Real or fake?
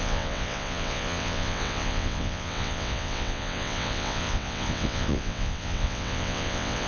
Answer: fake